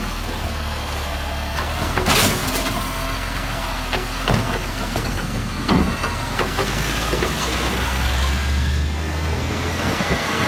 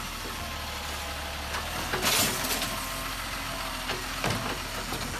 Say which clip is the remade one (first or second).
first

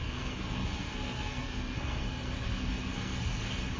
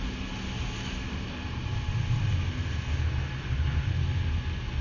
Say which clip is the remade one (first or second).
first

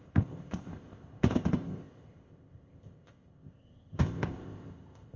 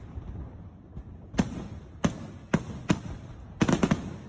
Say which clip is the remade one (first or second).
first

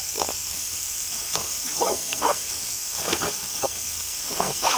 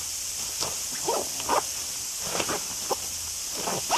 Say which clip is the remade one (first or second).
first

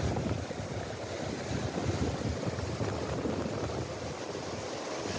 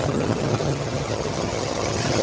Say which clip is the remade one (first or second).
second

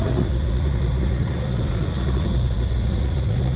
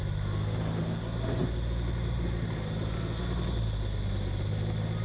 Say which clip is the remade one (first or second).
first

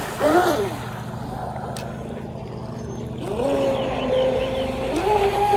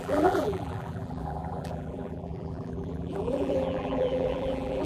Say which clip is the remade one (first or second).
second